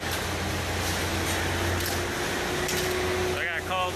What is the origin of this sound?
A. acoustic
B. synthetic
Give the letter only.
A